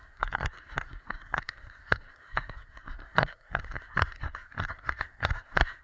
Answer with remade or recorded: remade